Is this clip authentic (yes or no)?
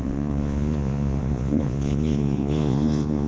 no